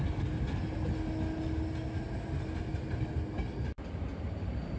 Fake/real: real